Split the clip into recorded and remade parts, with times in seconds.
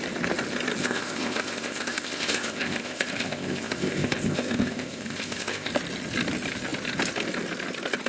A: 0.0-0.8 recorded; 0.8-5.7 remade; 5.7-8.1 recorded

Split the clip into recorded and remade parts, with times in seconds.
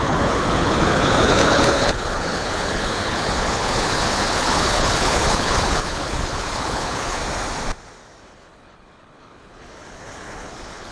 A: 0.0-7.2 remade; 7.2-8.2 recorded; 8.2-10.9 remade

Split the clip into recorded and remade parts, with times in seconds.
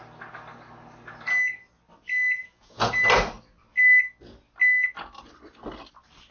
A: 0.0-2.4 recorded; 2.4-2.9 remade; 2.9-6.3 recorded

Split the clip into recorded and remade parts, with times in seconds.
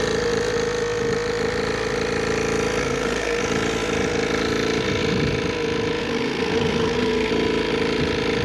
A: 0.0-2.8 recorded; 2.8-3.4 remade; 3.4-6.0 recorded; 6.0-7.3 remade; 7.3-8.4 recorded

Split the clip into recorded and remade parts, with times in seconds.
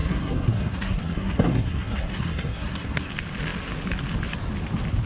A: 0.0-3.1 remade; 3.1-5.1 recorded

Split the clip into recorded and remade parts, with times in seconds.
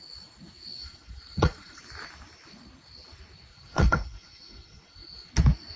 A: 0.0-0.8 recorded; 0.8-1.8 remade; 1.8-3.5 recorded; 3.5-5.3 remade; 5.3-5.8 recorded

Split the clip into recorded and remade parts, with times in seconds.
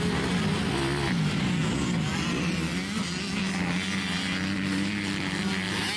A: 0.0-6.0 recorded